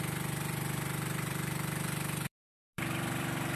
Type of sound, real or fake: fake